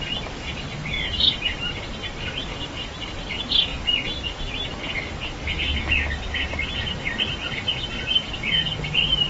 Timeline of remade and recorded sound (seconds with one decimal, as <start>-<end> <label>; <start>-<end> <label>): 0.0-9.3 recorded

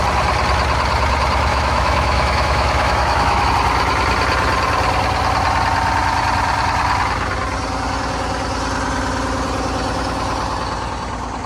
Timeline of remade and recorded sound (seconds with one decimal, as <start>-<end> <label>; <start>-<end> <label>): 0.0-1.5 recorded; 1.5-3.5 remade; 3.5-11.5 recorded

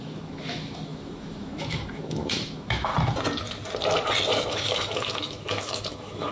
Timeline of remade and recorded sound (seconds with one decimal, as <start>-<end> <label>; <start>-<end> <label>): 0.0-2.9 remade; 2.9-4.5 recorded; 4.5-6.3 remade

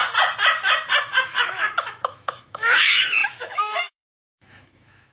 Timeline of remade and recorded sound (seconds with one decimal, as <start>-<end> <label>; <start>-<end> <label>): 0.0-1.1 recorded; 1.1-5.1 remade

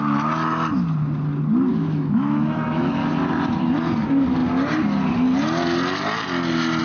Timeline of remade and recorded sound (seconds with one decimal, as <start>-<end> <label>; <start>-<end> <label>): 0.0-1.7 recorded; 1.7-2.9 remade; 2.9-6.8 recorded